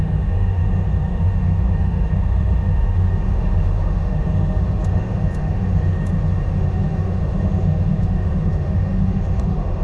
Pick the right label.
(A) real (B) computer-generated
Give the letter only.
B